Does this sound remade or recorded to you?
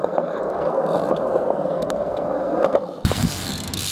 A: remade